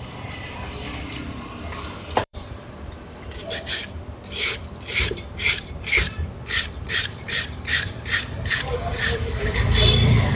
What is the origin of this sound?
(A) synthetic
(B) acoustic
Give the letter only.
A